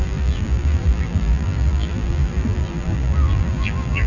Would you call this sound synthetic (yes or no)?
yes